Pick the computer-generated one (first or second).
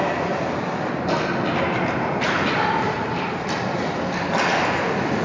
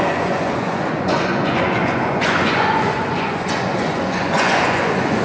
second